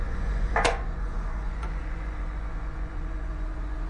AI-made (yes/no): yes